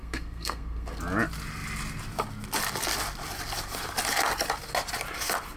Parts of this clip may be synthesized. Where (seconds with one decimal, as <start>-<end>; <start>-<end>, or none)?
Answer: 0.0-1.0